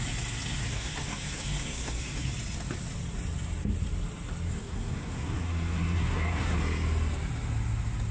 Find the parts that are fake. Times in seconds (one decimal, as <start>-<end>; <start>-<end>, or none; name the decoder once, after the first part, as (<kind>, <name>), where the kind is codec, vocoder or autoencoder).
0.6-2.3 (codec, SNAC); 4.5-6.6